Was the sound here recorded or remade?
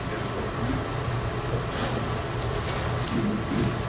recorded